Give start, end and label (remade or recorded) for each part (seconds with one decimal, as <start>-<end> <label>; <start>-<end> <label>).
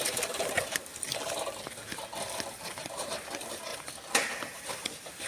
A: 0.0-0.9 remade; 0.9-2.6 recorded; 2.6-3.7 remade; 3.7-4.6 recorded; 4.6-5.3 remade